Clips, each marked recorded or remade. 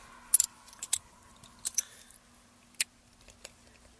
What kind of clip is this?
recorded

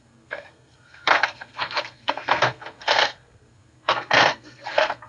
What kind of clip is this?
remade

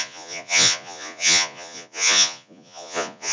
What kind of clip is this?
remade